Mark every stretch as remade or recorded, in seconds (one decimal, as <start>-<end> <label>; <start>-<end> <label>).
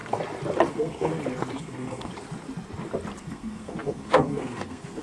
0.0-0.7 recorded; 0.7-1.1 remade; 1.1-1.6 recorded; 1.6-2.1 remade; 2.1-3.2 recorded; 3.2-5.0 remade